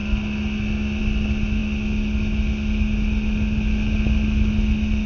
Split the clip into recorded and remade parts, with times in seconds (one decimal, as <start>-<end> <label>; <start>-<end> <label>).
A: 0.0-5.1 recorded